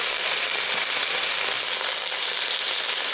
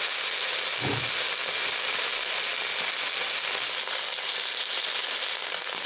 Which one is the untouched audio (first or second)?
second